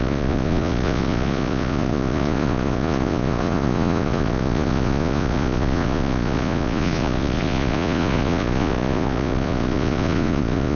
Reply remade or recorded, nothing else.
remade